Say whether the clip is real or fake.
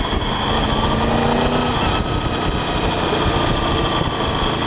real